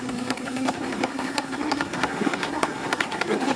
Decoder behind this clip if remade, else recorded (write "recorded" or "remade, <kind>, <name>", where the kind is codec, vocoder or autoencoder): remade, codec, SNAC